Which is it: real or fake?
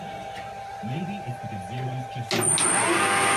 real